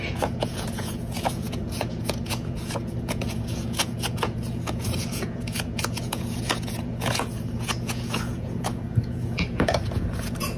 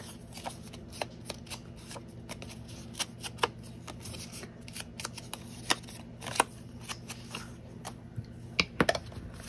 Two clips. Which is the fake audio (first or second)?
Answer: first